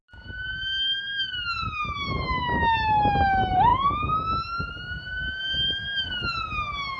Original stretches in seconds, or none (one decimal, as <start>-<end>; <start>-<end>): 0.0-7.0